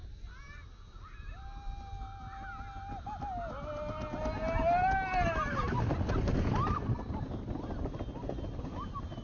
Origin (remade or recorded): recorded